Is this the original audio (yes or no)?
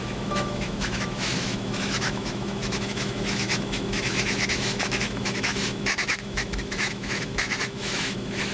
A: no